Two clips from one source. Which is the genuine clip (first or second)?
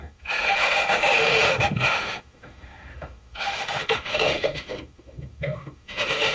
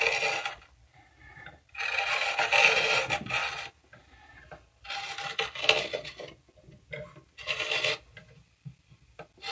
second